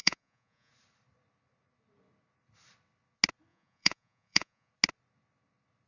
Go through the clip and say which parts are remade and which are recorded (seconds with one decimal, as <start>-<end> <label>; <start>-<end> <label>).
0.0-0.7 remade; 0.7-3.5 recorded; 3.5-4.7 remade; 4.7-5.9 recorded